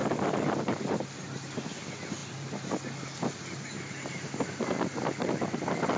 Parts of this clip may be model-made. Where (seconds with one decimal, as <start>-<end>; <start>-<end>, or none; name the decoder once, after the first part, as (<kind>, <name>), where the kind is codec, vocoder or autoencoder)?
none